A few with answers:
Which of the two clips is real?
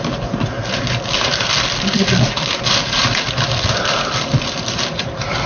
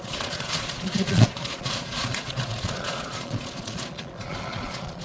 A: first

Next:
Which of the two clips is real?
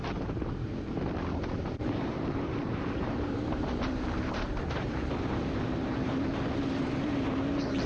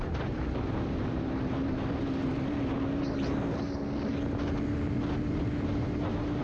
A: second